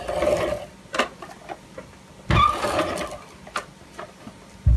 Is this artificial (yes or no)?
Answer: no